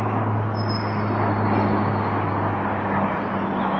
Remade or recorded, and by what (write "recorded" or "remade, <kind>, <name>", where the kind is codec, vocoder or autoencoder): recorded